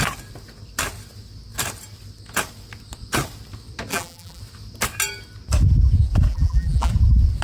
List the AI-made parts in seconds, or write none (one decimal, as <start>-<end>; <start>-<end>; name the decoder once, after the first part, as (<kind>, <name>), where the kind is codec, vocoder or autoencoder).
3.9-4.4 (vocoder, BigVGAN v2); 6.3-6.9